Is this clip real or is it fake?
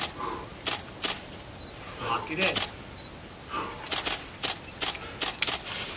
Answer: real